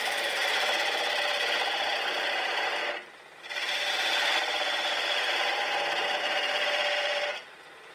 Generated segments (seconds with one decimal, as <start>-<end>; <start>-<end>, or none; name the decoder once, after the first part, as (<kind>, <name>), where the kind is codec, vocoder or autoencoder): 0.0-2.8 (vocoder, BigVGAN v2); 6.2-7.9